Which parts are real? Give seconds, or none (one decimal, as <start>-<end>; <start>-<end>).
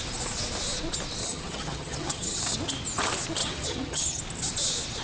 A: 0.0-1.2; 2.4-3.4; 4.2-5.0